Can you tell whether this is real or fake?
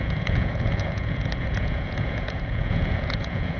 fake